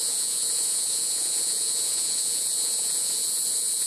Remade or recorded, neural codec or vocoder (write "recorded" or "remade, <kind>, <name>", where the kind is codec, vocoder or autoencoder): remade, vocoder, Vocos